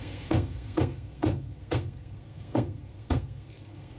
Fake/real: fake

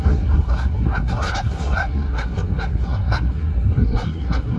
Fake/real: fake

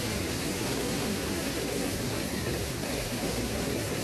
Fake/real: fake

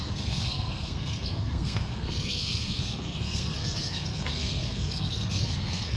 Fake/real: fake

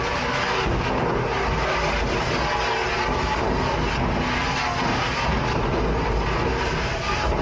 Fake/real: real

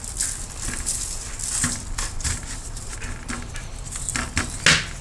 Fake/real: real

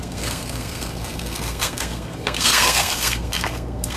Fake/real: fake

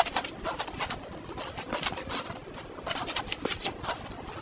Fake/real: real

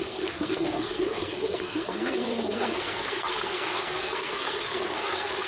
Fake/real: fake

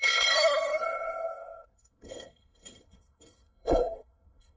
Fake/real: fake